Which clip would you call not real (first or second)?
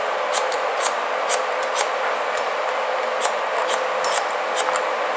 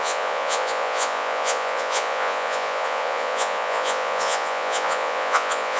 second